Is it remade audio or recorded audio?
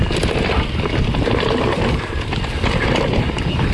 remade